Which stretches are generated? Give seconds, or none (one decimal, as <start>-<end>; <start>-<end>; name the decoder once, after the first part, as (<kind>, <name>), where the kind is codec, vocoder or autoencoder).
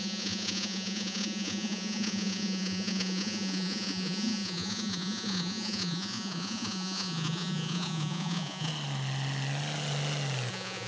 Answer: 0.0-8.7 (vocoder, Vocos); 10.5-10.9